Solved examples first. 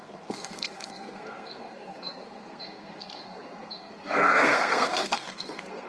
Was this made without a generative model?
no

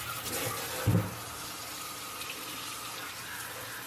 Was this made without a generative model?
yes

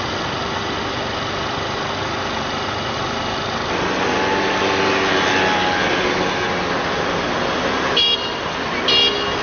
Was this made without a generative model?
yes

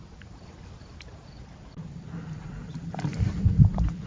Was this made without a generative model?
yes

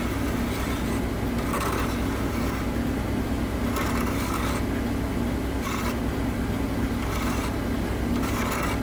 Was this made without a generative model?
yes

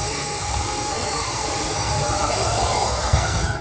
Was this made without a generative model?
no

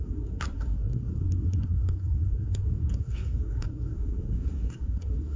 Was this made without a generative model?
no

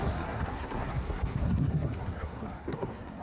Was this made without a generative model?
no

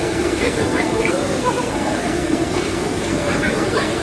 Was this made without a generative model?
no